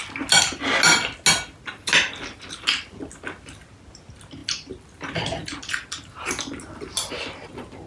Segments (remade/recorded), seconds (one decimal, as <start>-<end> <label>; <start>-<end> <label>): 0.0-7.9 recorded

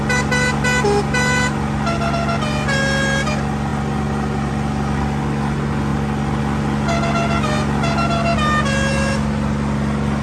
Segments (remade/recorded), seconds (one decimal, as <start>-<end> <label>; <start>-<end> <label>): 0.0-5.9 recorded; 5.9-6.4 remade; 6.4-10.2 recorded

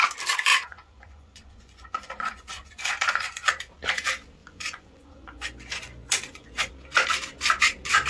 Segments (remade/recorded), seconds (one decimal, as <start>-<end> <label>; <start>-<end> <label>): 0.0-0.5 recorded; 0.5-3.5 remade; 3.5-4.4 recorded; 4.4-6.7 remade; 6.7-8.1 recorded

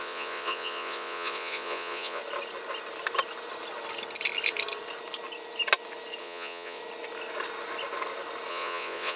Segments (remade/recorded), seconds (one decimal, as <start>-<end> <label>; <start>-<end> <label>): 0.0-2.2 remade; 2.2-6.2 recorded; 6.2-6.8 remade; 6.8-8.5 recorded; 8.5-9.2 remade

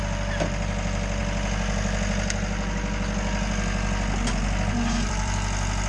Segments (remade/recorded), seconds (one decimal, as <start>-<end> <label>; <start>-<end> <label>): 0.0-1.2 remade; 1.2-4.7 recorded; 4.7-5.9 remade

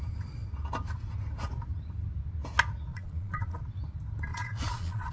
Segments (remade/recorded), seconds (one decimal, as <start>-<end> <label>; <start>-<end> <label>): 0.0-2.9 recorded; 2.9-3.6 remade; 3.6-4.3 recorded; 4.3-5.1 remade

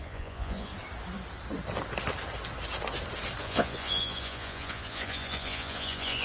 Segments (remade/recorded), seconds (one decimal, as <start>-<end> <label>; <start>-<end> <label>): 0.0-0.7 remade; 0.7-3.4 recorded; 3.4-6.2 remade

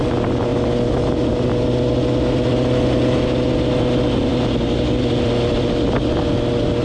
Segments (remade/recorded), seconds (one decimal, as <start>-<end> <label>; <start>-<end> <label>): 0.0-6.8 recorded